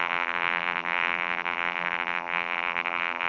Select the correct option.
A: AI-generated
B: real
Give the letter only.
A